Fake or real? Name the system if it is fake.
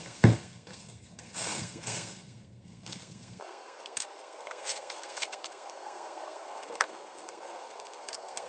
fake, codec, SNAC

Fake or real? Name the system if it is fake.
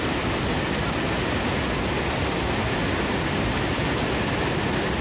real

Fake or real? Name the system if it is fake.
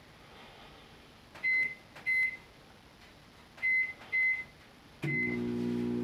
real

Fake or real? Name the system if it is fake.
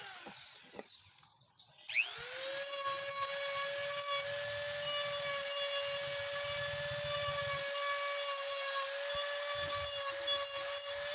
real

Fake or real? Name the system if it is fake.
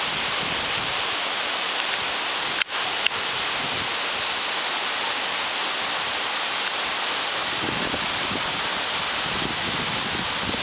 real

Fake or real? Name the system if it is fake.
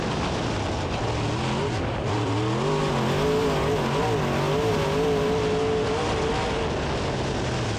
real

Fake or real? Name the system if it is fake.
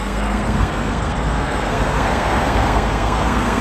fake, codec, SNAC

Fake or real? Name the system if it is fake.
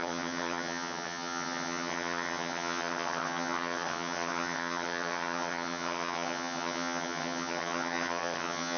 fake, vocoder, HiFi-GAN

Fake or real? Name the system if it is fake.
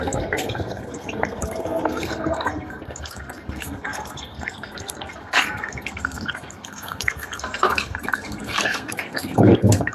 fake, codec, SNAC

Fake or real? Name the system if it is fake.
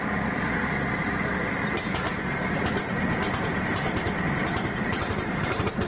fake, vocoder, BigVGAN v2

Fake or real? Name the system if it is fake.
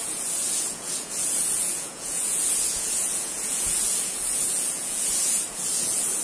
fake, vocoder, Vocos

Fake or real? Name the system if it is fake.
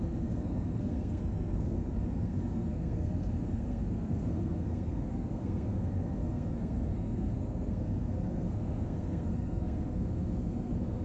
fake, codec, SNAC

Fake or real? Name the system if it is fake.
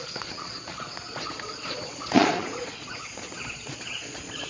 fake, vocoder, Vocos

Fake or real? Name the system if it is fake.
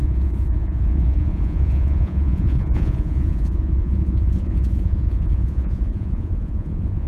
fake, vocoder, Vocos